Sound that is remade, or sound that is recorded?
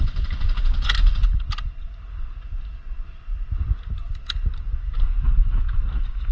recorded